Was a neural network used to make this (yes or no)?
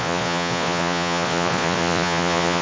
yes